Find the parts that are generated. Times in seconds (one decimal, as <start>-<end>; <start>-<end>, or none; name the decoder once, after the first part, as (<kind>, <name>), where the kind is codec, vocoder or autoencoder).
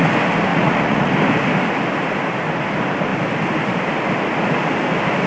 0.5-1.1 (vocoder, Vocos)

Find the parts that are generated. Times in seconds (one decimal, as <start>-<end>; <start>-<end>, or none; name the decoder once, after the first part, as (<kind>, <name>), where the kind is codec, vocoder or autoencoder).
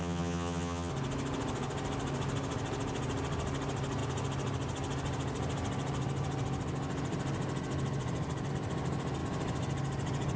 0.0-0.9 (vocoder, HiFi-GAN)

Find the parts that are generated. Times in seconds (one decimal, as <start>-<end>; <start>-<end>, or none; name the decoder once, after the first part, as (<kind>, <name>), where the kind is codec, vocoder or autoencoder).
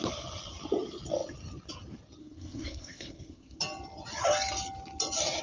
2.2-3.6 (codec, SNAC)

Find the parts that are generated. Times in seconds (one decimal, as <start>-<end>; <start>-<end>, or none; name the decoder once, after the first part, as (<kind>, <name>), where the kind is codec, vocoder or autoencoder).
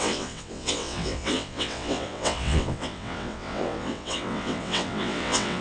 0.0-5.6 (vocoder, WaveNeXt)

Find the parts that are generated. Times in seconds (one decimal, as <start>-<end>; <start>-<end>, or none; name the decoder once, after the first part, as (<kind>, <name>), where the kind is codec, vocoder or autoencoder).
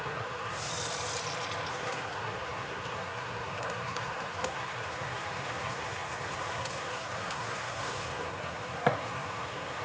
0.0-0.7 (codec, SNAC); 1.7-9.8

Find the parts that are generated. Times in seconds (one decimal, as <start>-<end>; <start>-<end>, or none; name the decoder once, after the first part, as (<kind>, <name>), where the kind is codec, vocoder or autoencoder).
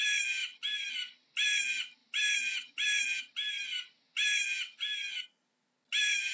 none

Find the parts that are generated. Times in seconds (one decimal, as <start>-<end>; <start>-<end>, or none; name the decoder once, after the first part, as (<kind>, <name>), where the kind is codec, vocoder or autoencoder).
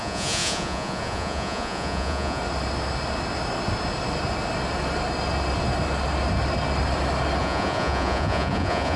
0.0-2.4 (vocoder, Vocos); 7.4-9.0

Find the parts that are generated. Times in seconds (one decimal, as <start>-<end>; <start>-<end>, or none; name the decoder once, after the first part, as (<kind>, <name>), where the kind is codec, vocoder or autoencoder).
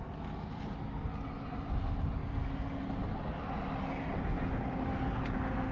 none